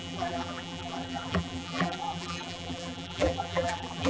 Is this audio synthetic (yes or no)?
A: yes